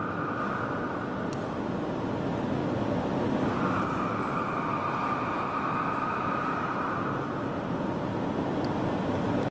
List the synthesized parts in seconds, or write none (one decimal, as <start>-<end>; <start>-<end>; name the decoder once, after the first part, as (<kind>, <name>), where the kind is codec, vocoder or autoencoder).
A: none

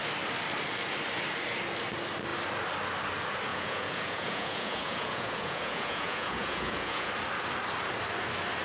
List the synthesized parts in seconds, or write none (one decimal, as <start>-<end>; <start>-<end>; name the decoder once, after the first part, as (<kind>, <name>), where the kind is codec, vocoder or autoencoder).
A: 3.5-7.1 (vocoder, Vocos)

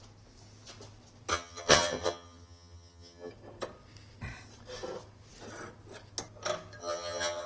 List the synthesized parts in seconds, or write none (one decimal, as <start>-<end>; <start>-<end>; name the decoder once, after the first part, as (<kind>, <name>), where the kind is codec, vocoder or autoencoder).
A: 1.3-3.3 (vocoder, HiFi-GAN); 6.8-7.5

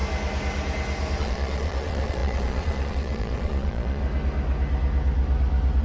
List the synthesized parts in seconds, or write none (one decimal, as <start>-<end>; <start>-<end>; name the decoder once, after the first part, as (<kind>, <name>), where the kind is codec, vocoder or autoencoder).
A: 1.2-4.0 (vocoder, Vocos)